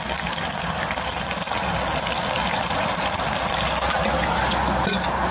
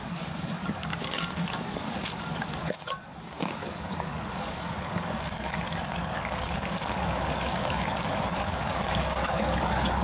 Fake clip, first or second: second